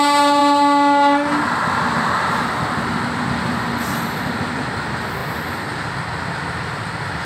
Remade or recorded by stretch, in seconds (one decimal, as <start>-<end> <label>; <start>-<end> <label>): 0.0-7.2 recorded